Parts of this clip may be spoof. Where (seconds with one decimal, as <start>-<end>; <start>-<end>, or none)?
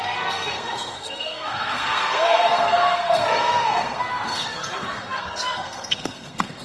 0.0-6.6